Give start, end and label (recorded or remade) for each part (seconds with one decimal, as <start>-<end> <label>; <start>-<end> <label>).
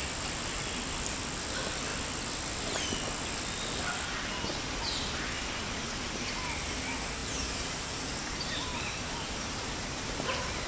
0.0-8.7 recorded; 8.7-9.3 remade; 9.3-10.7 recorded